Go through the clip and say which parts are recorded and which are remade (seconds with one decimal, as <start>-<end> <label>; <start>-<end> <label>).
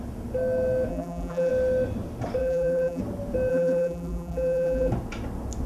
0.0-0.9 recorded; 0.9-1.5 remade; 1.5-2.4 recorded; 2.4-3.0 remade; 3.0-3.5 recorded; 3.5-4.9 remade; 4.9-5.7 recorded